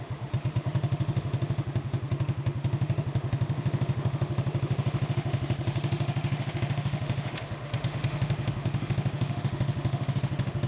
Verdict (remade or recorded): remade